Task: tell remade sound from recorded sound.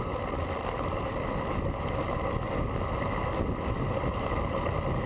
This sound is recorded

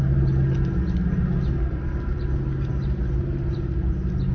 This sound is recorded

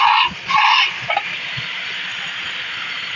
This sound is recorded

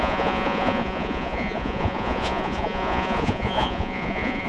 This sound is remade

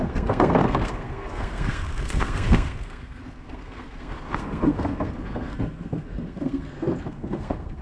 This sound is remade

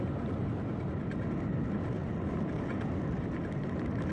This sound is recorded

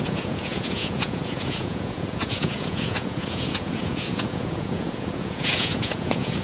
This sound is remade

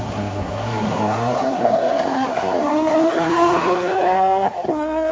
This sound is remade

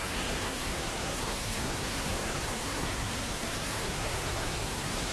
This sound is remade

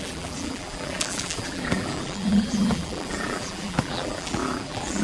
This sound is remade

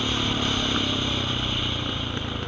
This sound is recorded